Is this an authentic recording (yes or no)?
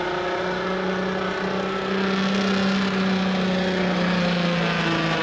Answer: yes